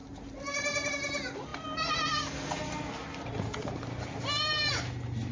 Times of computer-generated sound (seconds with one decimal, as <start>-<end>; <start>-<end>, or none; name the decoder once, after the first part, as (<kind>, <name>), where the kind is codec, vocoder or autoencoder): 0.0-0.9 (vocoder, BigVGAN v2); 3.1-4.6